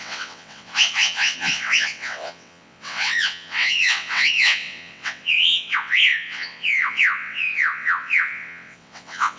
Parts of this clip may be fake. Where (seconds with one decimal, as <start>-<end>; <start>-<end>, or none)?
0.0-9.4